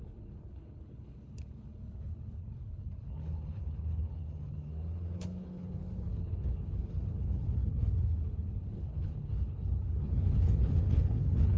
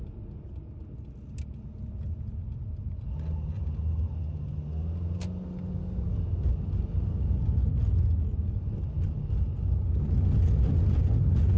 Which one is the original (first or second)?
second